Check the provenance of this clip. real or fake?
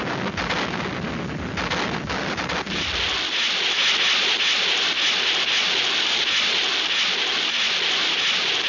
real